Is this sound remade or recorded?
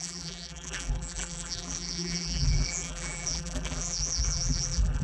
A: remade